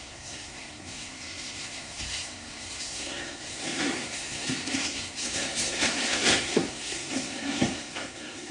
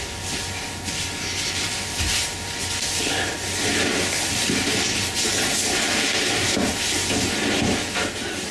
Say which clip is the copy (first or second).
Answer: first